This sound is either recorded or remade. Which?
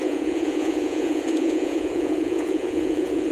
remade